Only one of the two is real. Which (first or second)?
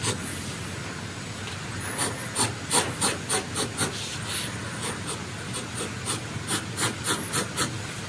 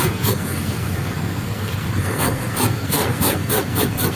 first